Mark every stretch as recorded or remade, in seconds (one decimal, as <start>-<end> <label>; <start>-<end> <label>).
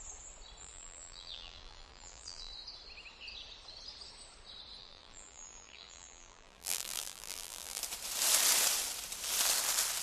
0.0-0.6 recorded; 0.6-2.5 remade; 2.5-4.8 recorded; 4.8-7.8 remade; 7.8-10.0 recorded